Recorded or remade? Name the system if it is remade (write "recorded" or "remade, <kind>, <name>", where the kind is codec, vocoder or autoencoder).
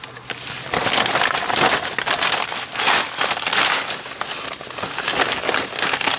recorded